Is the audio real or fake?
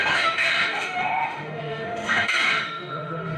fake